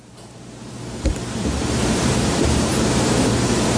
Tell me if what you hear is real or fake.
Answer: fake